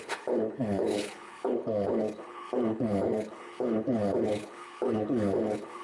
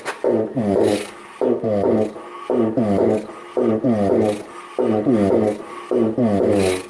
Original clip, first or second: second